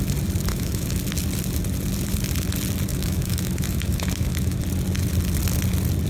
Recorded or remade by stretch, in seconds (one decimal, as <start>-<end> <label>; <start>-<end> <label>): 0.0-0.5 recorded; 0.5-1.0 remade; 1.0-2.9 recorded; 2.9-4.6 remade; 4.6-6.1 recorded